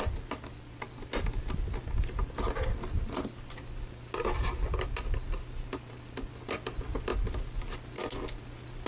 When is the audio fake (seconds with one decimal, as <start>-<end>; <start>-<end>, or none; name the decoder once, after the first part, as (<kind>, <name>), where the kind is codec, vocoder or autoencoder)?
none